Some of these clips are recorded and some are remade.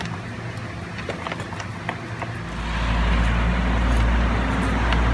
recorded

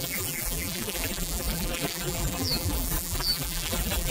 remade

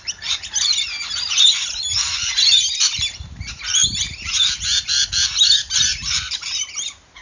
remade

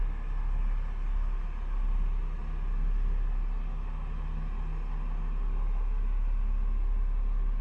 recorded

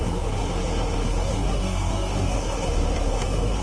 remade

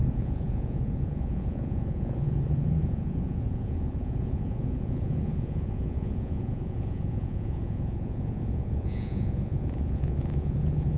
remade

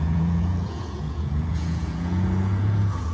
remade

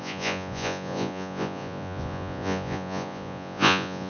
remade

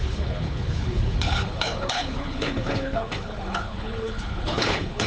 remade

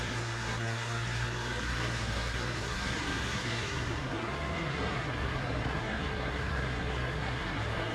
remade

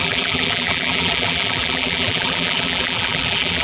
remade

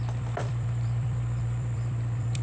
remade